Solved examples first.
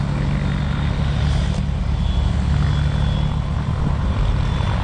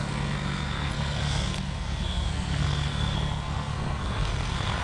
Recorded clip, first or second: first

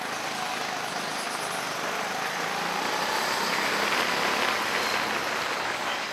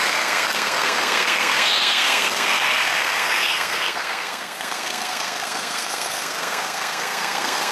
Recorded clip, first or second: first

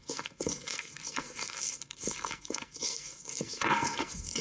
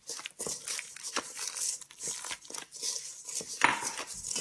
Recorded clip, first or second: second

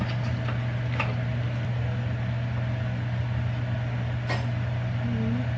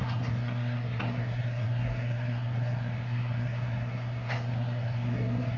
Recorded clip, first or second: first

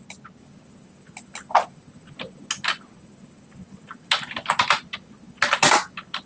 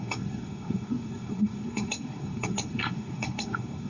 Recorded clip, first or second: first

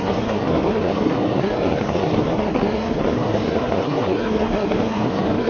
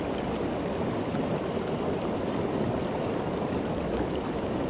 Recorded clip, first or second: second